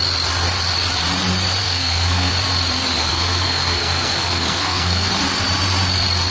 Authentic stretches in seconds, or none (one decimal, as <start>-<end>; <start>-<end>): 0.0-1.6; 2.3-3.0; 5.1-6.3